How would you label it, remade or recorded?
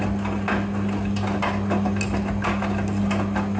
recorded